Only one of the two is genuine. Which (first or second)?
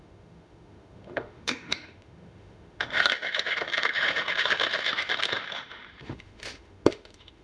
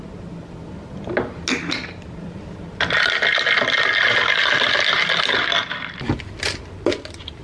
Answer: second